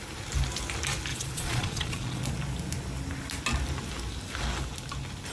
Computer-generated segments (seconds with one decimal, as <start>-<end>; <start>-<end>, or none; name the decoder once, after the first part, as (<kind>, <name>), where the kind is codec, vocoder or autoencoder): 1.1-2.2 (vocoder, Vocos)